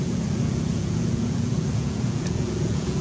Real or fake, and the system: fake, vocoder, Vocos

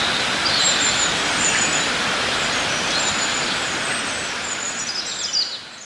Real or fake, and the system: real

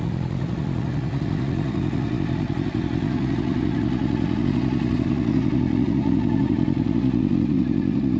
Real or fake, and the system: fake, vocoder, Vocos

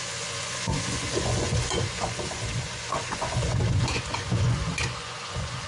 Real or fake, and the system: fake, vocoder, Vocos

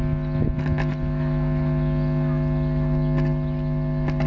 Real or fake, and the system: real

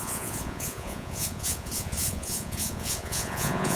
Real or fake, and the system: fake, vocoder, Vocos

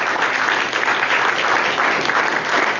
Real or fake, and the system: real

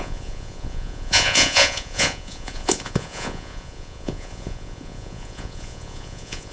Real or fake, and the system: fake, vocoder, Vocos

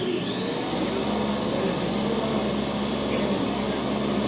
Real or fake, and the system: real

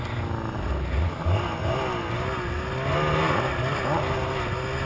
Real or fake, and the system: real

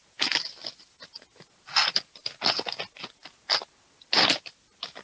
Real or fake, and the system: real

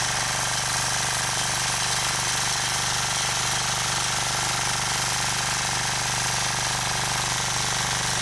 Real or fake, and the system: real